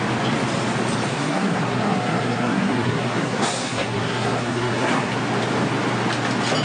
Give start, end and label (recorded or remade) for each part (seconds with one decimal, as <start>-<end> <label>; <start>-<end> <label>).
0.0-1.1 recorded; 1.1-5.1 remade; 5.1-6.6 recorded